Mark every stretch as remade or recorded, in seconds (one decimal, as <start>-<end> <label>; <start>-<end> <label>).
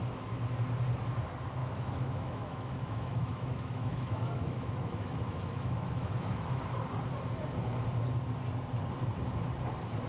0.0-1.6 recorded; 1.6-6.6 remade; 6.6-10.1 recorded